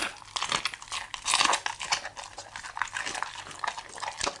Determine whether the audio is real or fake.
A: real